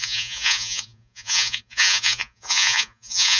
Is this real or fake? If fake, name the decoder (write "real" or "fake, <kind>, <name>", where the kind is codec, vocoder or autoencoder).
fake, vocoder, Vocos